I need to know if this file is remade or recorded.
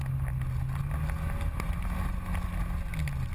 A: recorded